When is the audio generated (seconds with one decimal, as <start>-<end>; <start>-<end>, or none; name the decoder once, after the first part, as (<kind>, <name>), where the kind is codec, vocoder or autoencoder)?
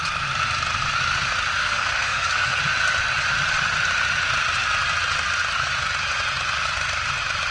1.6-2.6 (codec, SNAC)